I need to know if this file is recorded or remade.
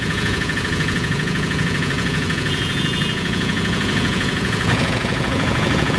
remade